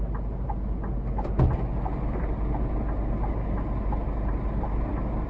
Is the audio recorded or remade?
recorded